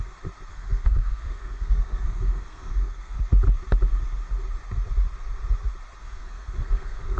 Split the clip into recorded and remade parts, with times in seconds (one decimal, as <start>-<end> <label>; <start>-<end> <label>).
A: 0.0-0.5 recorded; 0.5-3.2 remade; 3.2-6.0 recorded; 6.0-7.2 remade